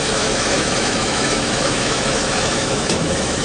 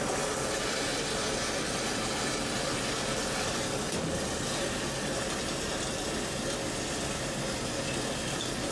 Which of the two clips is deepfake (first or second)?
first